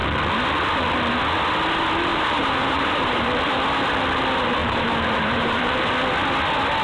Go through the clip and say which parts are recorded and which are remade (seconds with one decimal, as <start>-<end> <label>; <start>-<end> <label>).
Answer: 0.0-2.1 recorded; 2.1-3.3 remade; 3.3-4.6 recorded; 4.6-5.9 remade; 5.9-6.8 recorded